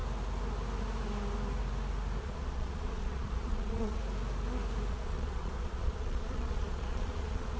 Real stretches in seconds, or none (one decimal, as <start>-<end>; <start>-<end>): 0.0-2.2; 4.0-4.9